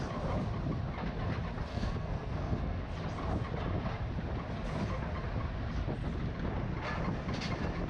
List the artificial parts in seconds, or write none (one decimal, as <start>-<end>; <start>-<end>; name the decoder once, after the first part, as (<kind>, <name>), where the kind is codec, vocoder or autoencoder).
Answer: 1.7-2.8 (codec, SNAC)

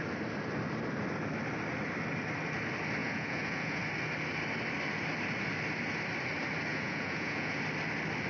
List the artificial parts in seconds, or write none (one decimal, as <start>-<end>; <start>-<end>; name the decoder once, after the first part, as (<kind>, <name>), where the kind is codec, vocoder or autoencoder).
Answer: 3.0-3.8 (vocoder, Vocos); 6.7-7.6

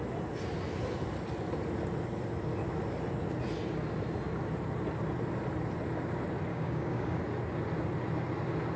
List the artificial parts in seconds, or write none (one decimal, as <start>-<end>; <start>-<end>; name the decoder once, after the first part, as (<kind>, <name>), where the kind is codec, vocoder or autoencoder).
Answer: 6.5-7.2 (codec, DAC)

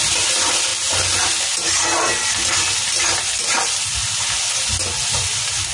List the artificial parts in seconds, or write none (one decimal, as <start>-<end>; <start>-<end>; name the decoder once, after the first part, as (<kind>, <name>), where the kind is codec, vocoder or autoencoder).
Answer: none